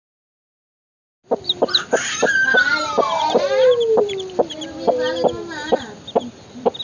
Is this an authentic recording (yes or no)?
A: yes